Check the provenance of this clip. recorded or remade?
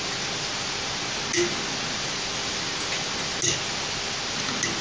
recorded